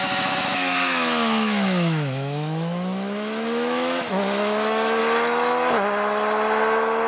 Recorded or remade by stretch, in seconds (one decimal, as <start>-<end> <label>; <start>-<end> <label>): 0.0-5.0 remade; 5.0-7.1 recorded